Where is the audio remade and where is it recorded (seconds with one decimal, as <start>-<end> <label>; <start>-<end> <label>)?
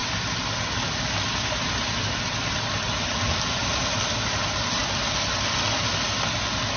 0.0-6.8 recorded